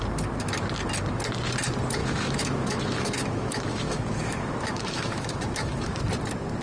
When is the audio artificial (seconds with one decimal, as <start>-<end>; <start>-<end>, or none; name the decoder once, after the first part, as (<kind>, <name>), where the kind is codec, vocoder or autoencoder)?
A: 2.0-6.0 (autoencoder, DAC-VAE)